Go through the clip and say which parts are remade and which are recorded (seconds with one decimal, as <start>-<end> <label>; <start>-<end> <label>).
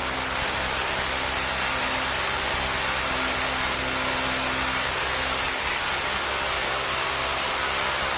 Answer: 0.0-6.6 recorded; 6.6-7.3 remade; 7.3-8.2 recorded